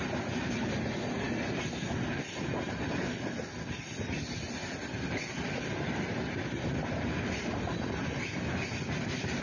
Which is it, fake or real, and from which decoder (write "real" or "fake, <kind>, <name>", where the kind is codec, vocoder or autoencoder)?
real